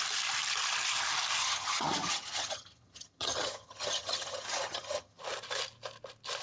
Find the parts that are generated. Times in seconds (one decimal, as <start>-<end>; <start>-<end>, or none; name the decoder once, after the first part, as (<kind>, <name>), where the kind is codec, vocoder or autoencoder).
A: 1.4-5.2 (vocoder, HiFi-GAN)